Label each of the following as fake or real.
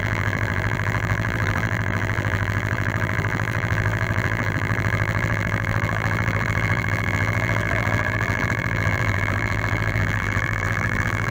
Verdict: fake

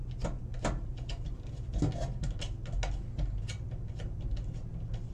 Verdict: real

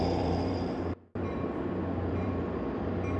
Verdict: fake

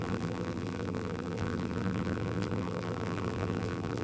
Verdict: fake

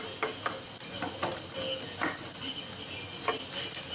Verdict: real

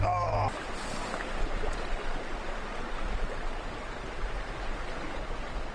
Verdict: real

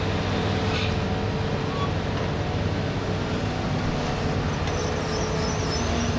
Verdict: real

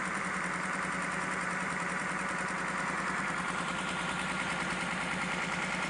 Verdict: fake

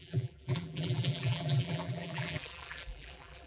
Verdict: fake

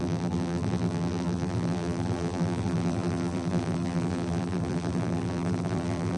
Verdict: fake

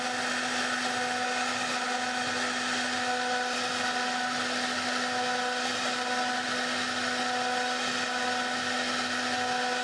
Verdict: real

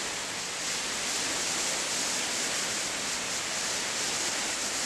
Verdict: real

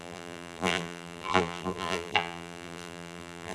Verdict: fake